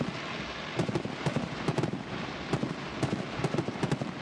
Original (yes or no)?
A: yes